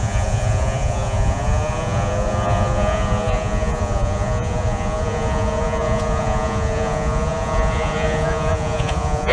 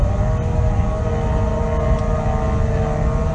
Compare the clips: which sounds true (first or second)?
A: second